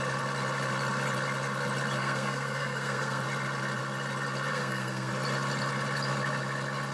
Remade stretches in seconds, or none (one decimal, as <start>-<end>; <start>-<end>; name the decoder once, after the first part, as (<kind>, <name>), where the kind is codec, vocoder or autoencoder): 2.0-3.2 (codec, SNAC); 4.5-5.1

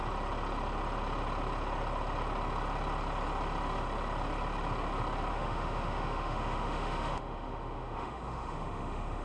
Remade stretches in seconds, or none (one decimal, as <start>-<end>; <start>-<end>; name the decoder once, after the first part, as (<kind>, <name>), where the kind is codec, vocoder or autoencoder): 5.3-9.2 (autoencoder, DAC-VAE)

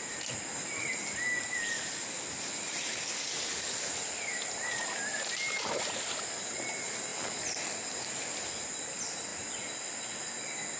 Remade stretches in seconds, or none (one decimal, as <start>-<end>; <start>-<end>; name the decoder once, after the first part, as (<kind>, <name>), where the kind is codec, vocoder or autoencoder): none

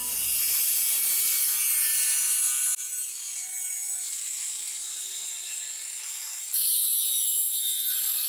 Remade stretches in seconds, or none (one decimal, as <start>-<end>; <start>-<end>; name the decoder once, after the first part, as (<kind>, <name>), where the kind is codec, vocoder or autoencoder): 5.0-6.9 (vocoder, BigVGAN v2); 7.5-8.3

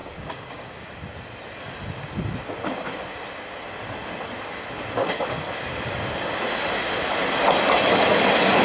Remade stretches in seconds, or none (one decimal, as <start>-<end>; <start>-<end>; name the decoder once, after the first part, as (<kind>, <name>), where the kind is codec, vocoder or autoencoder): 0.0-0.9 (codec, DAC); 5.0-5.5